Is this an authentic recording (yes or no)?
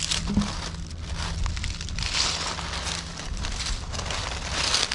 yes